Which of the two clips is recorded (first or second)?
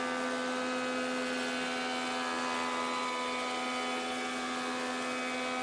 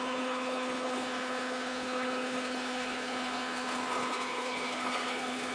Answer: first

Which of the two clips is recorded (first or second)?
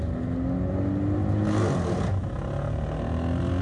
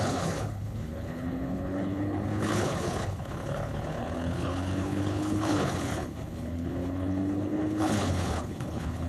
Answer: first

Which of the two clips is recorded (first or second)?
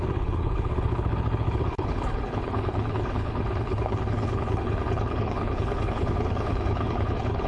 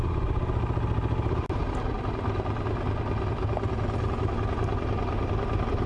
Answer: second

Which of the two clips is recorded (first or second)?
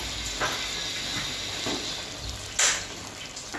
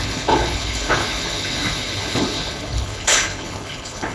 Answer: first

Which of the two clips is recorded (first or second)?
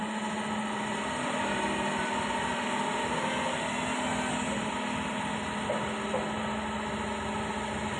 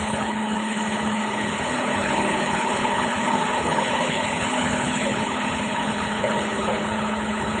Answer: first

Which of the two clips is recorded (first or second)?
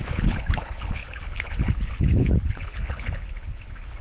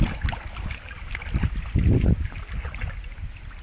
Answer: second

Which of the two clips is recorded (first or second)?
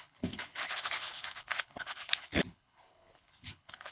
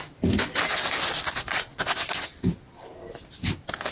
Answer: second